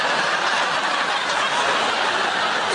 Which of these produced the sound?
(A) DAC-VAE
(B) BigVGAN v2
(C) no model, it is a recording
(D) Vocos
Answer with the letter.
C